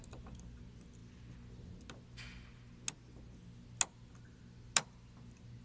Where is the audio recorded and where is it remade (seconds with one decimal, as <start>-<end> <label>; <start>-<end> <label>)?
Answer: 0.0-5.6 recorded